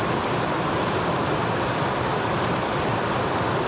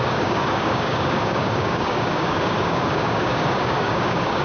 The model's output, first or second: second